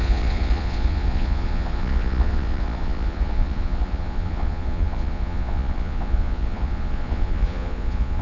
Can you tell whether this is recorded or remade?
remade